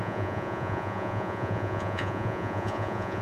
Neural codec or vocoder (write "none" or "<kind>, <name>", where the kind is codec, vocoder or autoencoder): vocoder, Vocos